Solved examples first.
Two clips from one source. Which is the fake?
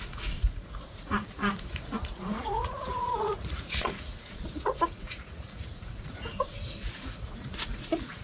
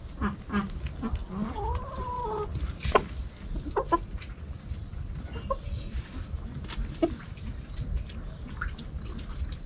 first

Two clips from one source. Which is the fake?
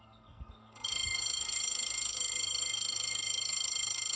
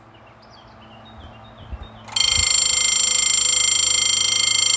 first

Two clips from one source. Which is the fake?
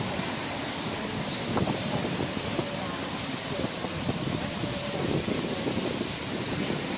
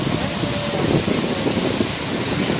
first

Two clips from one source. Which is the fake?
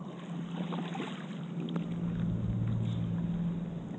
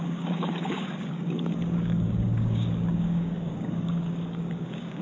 second